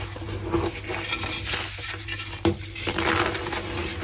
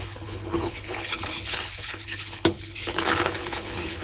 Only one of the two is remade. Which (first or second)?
second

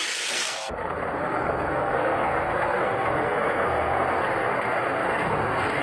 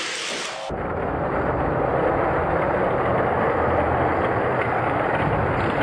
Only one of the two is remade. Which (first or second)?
first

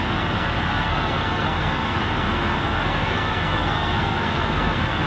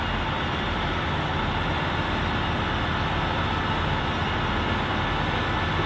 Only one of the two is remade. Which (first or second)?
first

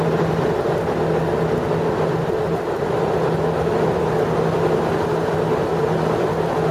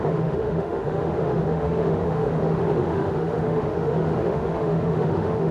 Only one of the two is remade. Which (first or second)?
second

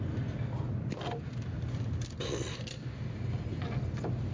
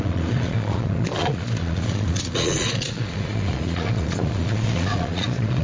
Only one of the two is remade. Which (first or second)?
second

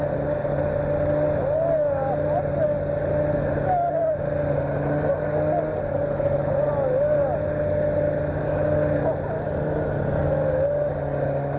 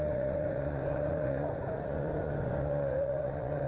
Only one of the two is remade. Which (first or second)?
second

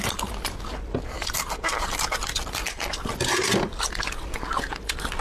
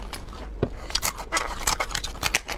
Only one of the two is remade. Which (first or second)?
first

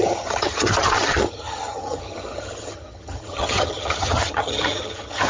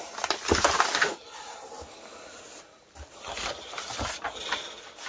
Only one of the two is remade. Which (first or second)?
first